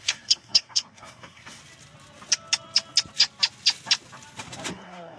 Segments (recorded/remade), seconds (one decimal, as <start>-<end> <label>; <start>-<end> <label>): 0.0-1.6 remade; 1.6-4.7 recorded; 4.7-5.2 remade